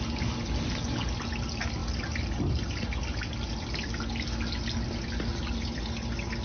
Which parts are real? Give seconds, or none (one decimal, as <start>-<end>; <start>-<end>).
0.0-6.4